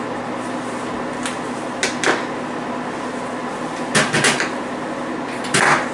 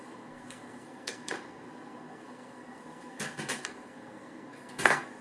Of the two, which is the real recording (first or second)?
first